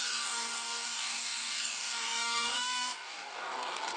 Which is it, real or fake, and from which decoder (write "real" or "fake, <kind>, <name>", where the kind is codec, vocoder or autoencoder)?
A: fake, codec, DAC